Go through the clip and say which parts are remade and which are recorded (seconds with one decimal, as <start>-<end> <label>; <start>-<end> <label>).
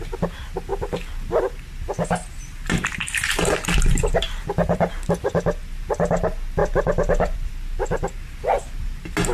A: 0.0-0.7 recorded; 0.7-4.9 remade; 4.9-6.6 recorded; 6.6-7.5 remade; 7.5-9.3 recorded